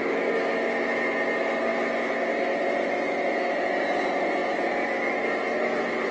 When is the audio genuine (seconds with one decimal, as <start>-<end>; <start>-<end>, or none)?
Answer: 0.0-6.1